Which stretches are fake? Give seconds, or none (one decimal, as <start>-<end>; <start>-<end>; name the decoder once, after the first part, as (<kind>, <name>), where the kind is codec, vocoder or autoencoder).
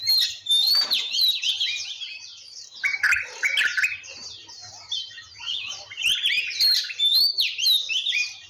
none